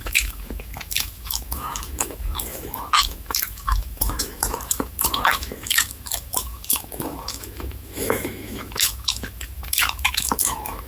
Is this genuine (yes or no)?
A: no